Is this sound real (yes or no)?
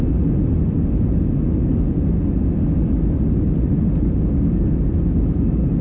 yes